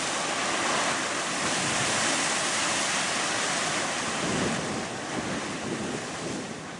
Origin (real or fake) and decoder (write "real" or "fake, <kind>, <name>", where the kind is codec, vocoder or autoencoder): real